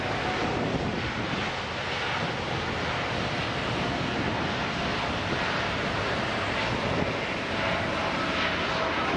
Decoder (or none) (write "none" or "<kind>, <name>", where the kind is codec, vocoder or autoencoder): none